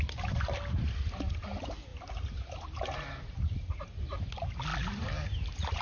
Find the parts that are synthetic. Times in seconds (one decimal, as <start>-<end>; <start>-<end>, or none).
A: none